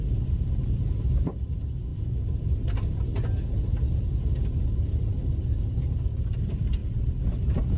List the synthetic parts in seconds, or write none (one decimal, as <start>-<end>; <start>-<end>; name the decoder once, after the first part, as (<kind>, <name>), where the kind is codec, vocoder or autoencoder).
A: none